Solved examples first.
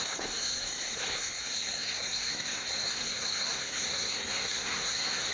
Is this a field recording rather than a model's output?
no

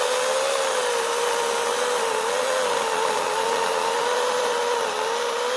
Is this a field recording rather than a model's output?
yes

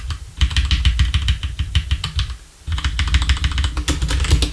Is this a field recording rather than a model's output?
yes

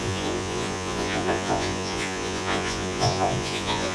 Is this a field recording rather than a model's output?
no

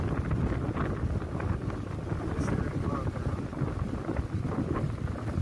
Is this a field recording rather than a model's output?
yes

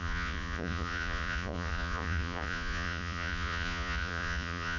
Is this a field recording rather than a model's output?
no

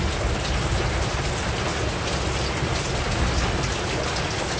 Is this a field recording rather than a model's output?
yes